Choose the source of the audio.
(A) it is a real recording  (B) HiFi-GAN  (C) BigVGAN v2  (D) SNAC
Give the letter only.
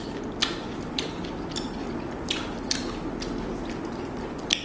A